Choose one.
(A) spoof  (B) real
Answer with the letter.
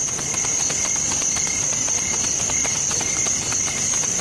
B